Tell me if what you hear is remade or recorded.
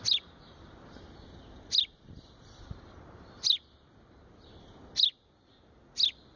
recorded